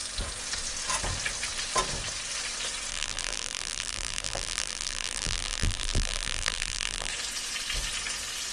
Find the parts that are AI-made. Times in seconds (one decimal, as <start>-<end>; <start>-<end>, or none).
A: 2.9-7.1